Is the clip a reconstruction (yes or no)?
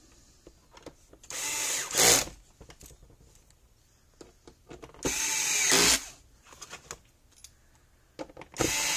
no